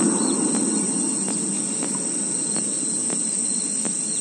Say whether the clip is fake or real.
real